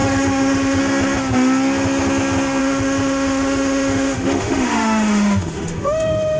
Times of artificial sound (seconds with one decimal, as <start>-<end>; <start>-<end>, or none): 0.0-0.8; 2.6-6.4